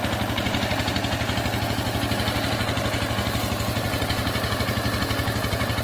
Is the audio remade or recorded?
recorded